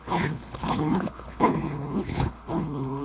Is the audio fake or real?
fake